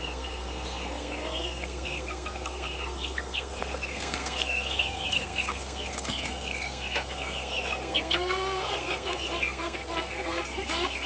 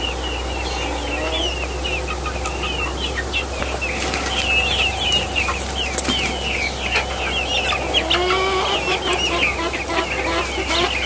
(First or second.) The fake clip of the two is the first